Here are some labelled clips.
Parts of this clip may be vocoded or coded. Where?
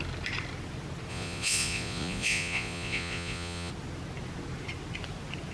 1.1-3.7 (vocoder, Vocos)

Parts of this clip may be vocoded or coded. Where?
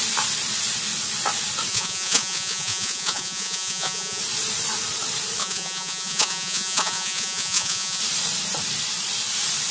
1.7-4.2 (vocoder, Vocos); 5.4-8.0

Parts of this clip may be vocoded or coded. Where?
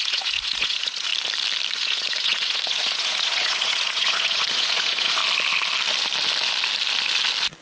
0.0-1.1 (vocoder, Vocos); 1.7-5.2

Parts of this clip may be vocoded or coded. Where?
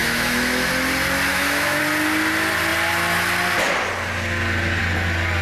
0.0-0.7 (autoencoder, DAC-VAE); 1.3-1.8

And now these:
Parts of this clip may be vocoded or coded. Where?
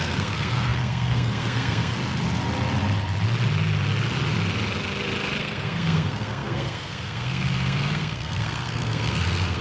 0.0-2.0 (codec, SNAC); 5.4-9.6